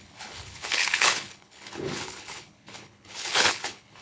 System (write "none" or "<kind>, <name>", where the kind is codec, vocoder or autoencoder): codec, HILCodec